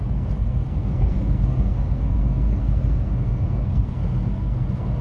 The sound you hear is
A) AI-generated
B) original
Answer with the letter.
A